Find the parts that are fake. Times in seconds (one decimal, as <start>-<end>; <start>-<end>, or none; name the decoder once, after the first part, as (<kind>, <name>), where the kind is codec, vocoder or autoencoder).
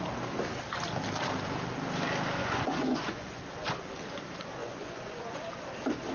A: 2.4-3.4 (vocoder, Vocos); 4.6-5.4